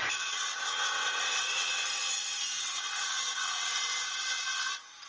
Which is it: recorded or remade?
remade